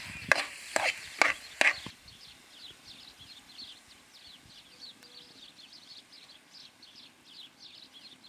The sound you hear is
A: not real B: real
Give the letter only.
B